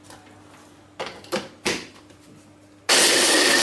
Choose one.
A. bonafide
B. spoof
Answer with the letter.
A